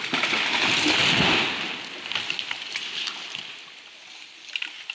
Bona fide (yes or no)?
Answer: yes